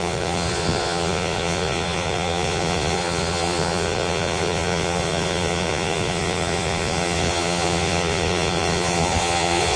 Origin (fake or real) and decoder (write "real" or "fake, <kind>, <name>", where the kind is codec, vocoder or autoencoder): fake, vocoder, Vocos